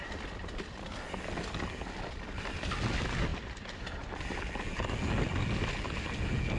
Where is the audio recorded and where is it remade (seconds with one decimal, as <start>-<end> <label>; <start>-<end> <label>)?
0.0-6.6 recorded